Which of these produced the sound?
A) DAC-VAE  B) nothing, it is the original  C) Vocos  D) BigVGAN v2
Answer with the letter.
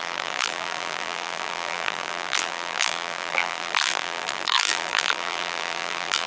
D